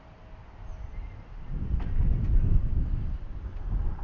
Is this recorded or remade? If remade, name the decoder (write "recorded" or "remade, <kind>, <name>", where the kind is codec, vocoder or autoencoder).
recorded